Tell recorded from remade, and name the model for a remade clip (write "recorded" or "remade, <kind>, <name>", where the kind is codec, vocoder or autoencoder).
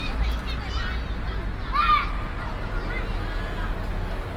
recorded